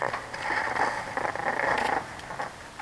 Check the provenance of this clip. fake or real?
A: real